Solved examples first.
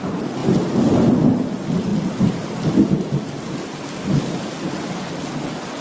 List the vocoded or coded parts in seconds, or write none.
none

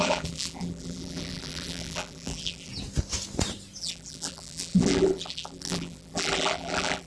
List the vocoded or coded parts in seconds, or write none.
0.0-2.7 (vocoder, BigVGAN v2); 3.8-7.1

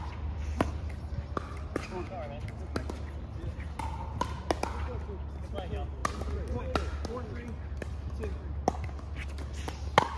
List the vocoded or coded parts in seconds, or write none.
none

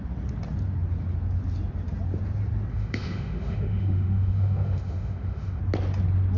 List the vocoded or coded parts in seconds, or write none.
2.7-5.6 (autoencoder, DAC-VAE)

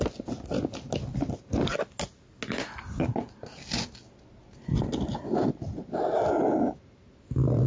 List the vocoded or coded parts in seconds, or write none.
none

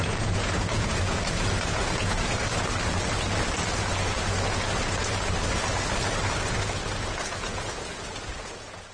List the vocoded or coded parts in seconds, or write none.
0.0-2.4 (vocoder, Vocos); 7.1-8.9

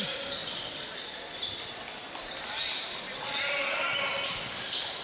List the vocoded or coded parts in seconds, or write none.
none

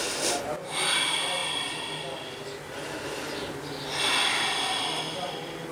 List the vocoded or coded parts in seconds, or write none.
none